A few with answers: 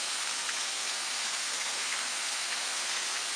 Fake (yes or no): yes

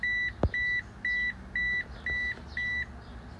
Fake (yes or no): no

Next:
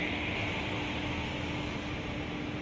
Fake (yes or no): no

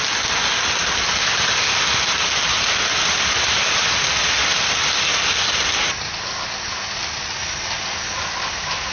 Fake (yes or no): no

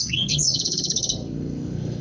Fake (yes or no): yes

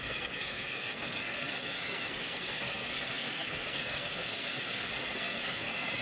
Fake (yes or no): yes